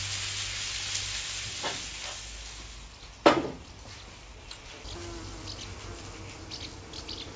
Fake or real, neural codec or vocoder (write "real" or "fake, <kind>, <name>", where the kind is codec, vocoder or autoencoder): real